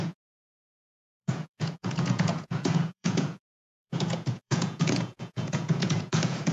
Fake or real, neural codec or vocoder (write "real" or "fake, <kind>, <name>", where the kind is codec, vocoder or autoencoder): fake, vocoder, Vocos